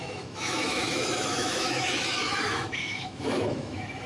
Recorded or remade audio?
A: remade